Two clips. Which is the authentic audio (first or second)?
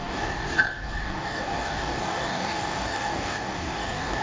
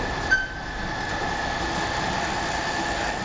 second